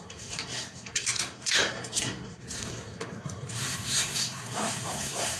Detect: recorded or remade remade